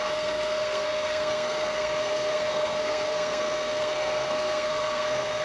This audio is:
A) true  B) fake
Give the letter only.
B